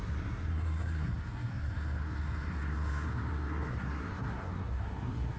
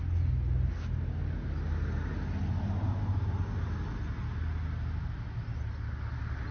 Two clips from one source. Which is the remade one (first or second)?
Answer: first